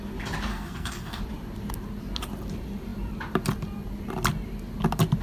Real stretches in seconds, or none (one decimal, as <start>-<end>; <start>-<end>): 0.0-0.5; 1.2-5.2